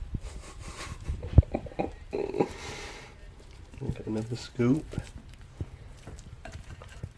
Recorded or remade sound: remade